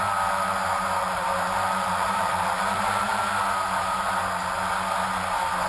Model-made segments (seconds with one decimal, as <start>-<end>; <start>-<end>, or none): 1.0-3.2